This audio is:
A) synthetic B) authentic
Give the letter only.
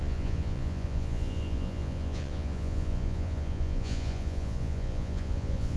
A